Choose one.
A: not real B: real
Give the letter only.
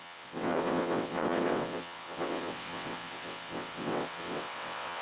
A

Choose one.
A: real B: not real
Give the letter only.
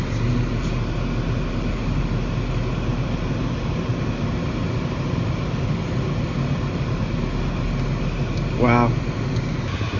A